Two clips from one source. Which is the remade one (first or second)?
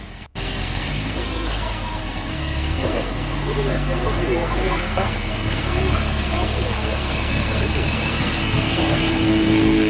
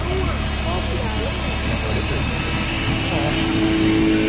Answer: first